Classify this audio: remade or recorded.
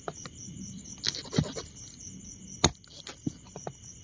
recorded